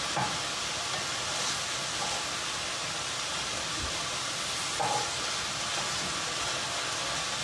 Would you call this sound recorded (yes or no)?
yes